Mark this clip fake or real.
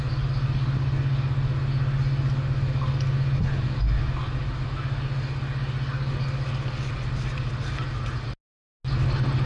real